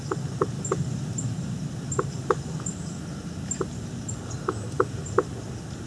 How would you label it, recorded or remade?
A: recorded